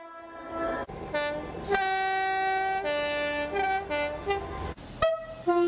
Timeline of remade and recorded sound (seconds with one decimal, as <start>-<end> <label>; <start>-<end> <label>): 0.0-5.7 recorded